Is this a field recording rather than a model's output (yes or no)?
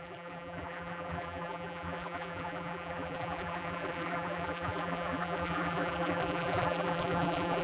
no